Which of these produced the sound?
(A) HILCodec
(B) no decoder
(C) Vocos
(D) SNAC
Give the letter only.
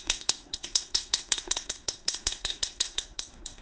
D